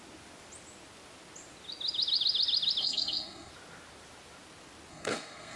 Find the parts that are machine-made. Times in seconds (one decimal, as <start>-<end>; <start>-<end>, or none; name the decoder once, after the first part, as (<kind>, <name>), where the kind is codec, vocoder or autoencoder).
2.8-3.5 (codec, SNAC); 4.9-5.6